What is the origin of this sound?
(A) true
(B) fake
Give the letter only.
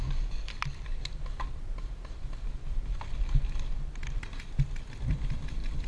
B